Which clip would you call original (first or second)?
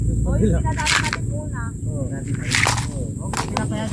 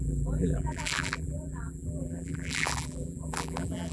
first